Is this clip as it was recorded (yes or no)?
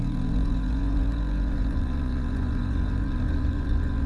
no